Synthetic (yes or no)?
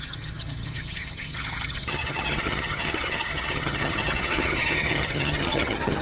yes